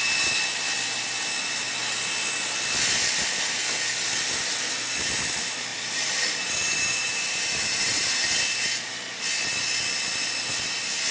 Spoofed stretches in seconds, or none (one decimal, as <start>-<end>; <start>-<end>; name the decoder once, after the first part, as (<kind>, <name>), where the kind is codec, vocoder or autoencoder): 5.7-8.4 (vocoder, BigVGAN v2)